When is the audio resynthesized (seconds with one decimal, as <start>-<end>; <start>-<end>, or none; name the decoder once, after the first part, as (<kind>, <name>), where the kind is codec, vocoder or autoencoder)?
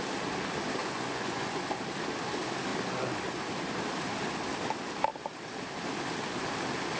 0.8-1.6 (vocoder, Vocos)